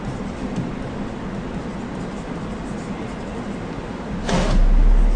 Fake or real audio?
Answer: real